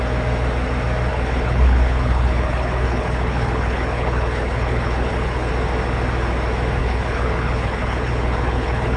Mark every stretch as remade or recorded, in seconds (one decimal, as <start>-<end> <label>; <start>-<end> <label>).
0.0-1.1 recorded; 1.1-5.5 remade; 5.5-6.8 recorded; 6.8-9.0 remade